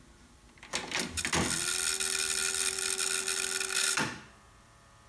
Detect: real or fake real